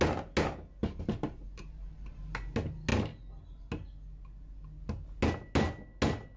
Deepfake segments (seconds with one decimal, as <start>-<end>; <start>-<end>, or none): 0.8-2.2